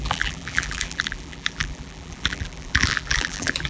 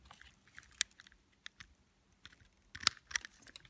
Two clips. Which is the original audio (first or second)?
second